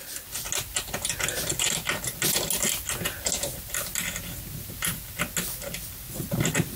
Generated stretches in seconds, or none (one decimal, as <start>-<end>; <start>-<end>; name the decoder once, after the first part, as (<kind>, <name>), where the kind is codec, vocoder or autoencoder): none